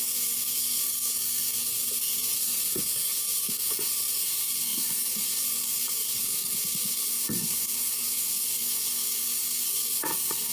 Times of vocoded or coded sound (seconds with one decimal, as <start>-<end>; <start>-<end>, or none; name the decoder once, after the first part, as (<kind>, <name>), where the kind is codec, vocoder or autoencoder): 0.0-10.5 (codec, SNAC)